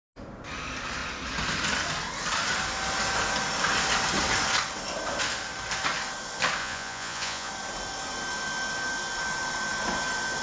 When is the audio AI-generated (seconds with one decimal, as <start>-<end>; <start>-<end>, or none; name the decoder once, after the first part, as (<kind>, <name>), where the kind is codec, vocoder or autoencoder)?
6.6-7.5 (vocoder, Vocos)